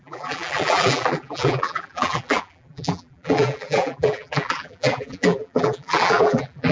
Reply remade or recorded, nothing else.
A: remade